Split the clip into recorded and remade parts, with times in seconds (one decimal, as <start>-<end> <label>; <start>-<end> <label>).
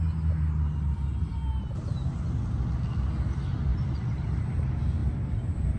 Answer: 0.0-3.7 recorded; 3.7-4.6 remade; 4.6-5.0 recorded; 5.0-5.8 remade